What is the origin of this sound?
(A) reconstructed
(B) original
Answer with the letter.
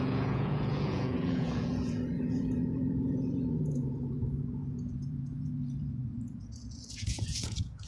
A